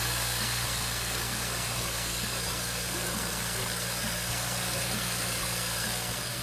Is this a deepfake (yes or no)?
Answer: yes